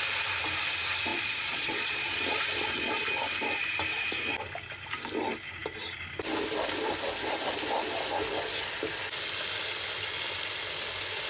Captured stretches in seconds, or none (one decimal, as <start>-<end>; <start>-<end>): 0.0-1.1; 2.9-11.3